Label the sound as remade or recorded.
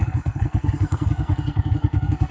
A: remade